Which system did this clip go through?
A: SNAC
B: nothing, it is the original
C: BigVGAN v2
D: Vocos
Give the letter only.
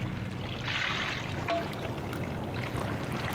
B